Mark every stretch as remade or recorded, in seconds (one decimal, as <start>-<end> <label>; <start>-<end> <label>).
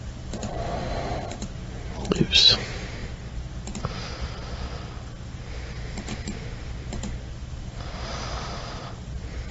0.0-0.5 recorded; 0.5-1.3 remade; 1.3-9.5 recorded